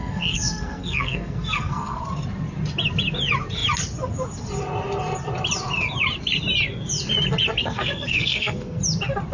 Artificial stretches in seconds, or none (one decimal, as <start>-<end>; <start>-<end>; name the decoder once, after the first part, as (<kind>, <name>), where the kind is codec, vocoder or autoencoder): 0.0-2.0 (codec, SNAC); 7.6-8.8